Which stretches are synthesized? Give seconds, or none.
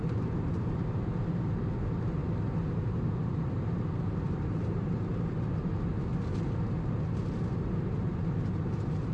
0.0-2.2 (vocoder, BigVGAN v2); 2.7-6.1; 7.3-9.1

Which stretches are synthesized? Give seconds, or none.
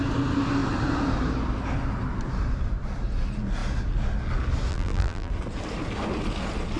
4.7-5.3 (vocoder, BigVGAN v2)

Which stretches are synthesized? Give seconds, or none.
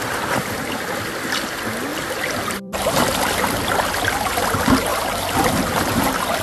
1.9-3.0 (vocoder, BigVGAN v2)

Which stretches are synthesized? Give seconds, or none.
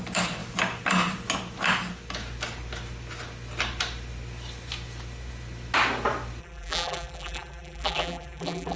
6.4-8.8 (vocoder, BigVGAN v2)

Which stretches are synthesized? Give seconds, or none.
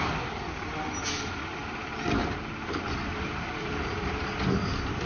2.2-4.1 (vocoder, BigVGAN v2)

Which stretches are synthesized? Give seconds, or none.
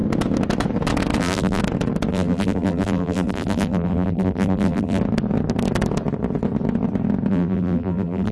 1.2-1.6 (vocoder, BigVGAN v2); 2.1-5.0; 7.3-8.3